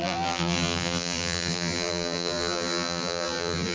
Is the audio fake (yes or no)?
yes